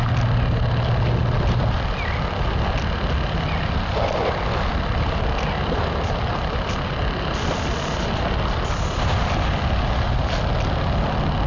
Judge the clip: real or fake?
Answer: real